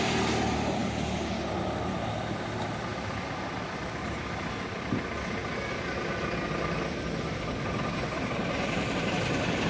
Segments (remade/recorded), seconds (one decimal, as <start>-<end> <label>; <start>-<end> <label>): 0.0-9.7 recorded